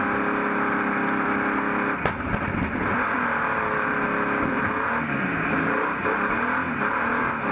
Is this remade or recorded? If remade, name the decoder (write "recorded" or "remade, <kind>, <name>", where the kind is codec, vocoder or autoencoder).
recorded